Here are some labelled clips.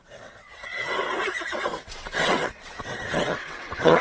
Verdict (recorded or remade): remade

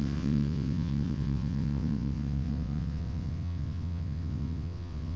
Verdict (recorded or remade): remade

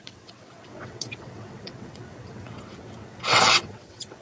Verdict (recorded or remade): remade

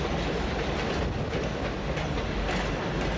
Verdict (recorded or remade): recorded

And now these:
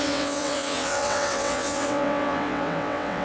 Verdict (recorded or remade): remade